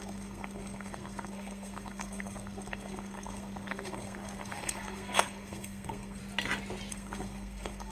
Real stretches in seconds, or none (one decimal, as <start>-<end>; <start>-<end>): 6.2-6.9